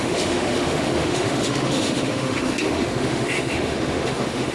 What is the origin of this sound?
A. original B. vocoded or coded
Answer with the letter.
B